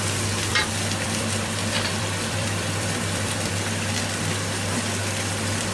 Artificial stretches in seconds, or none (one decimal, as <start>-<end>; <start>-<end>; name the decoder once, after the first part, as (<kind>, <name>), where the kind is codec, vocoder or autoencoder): 0.5-3.9 (vocoder, BigVGAN v2)